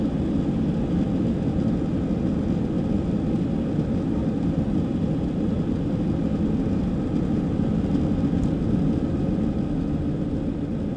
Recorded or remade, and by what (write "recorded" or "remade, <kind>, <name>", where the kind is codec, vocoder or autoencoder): recorded